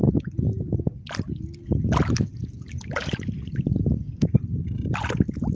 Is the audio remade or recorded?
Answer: recorded